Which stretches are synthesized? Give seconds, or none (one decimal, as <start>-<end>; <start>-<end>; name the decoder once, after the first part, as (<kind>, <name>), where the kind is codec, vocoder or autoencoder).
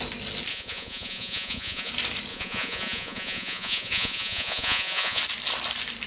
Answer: 0.5-1.9 (vocoder, Vocos); 2.3-5.2